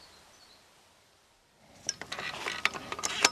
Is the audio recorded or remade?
remade